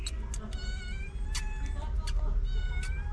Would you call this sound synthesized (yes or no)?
no